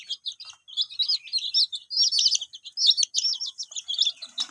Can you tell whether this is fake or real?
real